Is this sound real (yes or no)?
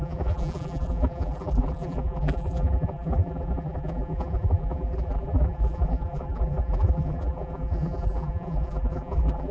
no